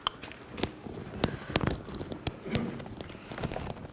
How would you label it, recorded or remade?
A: recorded